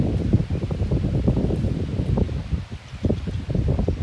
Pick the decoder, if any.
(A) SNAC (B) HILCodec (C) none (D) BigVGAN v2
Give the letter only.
C